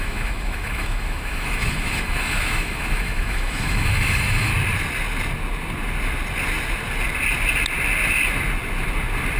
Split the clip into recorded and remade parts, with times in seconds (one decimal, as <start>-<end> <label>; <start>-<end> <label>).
0.0-4.5 remade; 4.5-9.4 recorded